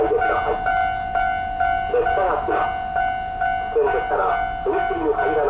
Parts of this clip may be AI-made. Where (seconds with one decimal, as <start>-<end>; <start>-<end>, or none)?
none